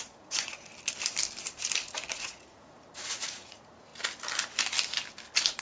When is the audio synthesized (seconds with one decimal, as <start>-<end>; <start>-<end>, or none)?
0.0-0.7; 2.1-3.9